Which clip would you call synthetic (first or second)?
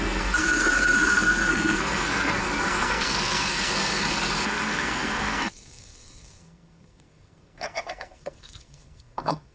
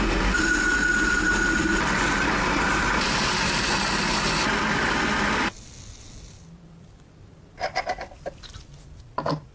first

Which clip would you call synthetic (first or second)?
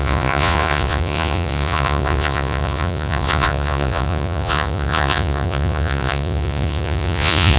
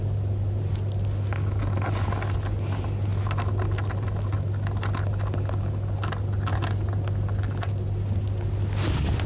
first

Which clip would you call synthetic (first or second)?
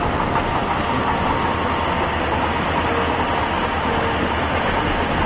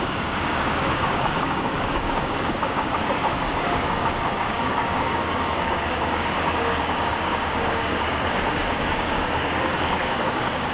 second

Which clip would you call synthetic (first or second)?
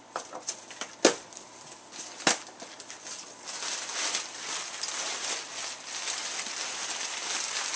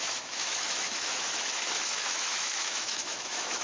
second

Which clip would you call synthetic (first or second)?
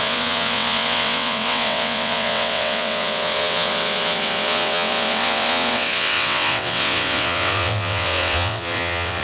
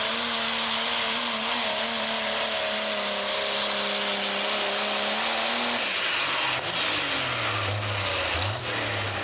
first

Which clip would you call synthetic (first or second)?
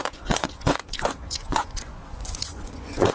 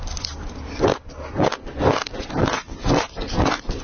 first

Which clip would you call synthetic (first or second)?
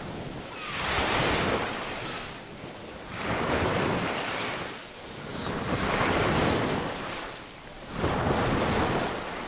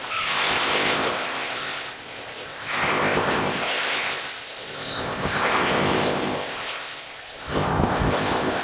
second